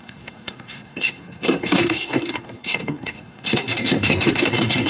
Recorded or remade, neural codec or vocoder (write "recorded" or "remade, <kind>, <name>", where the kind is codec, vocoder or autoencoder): remade, codec, SNAC